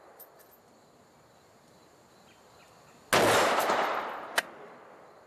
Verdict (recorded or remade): recorded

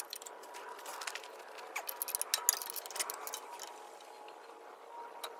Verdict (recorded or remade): recorded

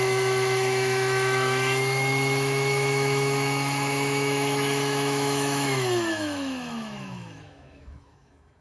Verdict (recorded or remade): remade